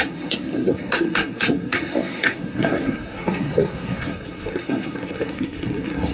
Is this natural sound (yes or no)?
no